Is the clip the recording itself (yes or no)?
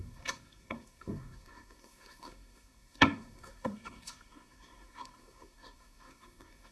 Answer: no